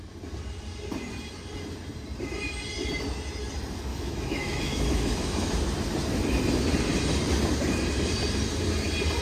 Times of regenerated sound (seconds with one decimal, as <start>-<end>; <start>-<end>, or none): 3.9-5.5